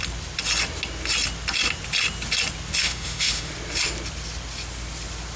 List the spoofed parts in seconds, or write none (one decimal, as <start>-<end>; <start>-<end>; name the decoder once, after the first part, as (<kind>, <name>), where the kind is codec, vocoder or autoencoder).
2.8-3.5 (autoencoder, DAC-VAE)